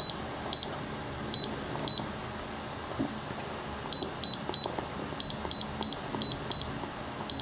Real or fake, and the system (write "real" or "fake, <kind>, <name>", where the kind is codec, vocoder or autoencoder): real